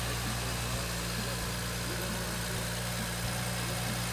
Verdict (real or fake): real